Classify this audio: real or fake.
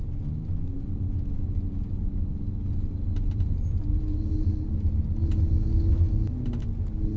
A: real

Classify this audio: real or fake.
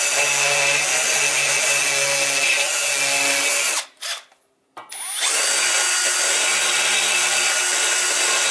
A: real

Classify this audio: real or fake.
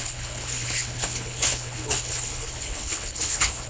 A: fake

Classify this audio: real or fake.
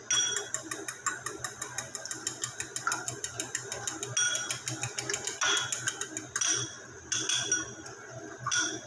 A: real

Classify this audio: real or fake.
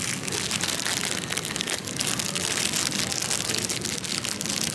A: real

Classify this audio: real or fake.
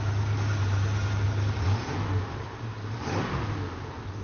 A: real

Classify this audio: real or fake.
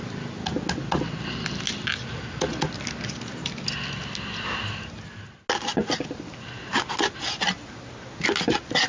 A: real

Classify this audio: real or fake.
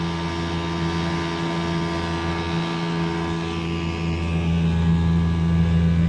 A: real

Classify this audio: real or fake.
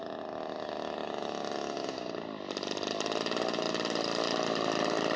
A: real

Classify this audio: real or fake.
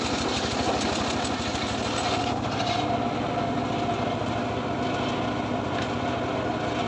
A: real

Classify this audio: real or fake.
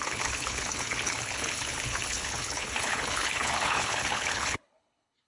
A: fake